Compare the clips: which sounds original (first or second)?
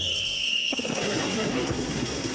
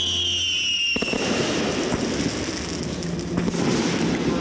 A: second